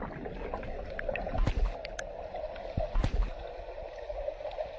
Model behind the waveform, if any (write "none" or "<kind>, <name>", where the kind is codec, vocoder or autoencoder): none